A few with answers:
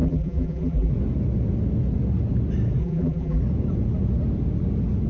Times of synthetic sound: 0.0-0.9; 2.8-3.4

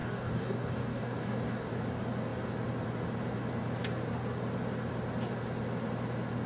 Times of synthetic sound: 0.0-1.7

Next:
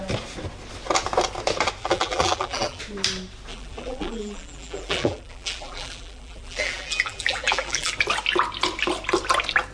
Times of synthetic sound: 1.8-2.8; 3.5-7.9

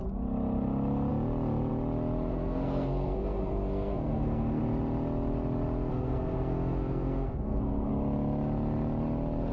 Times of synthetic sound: 2.3-4.6; 5.9-7.9